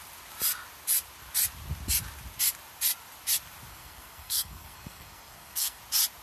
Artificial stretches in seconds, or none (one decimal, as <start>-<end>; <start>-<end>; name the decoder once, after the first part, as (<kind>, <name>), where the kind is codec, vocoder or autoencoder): 3.7-5.8 (codec, SNAC)